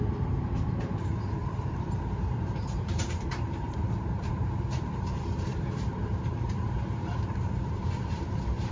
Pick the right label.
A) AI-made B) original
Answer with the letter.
A